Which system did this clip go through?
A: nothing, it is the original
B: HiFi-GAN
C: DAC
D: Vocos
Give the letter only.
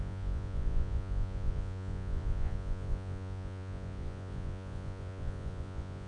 D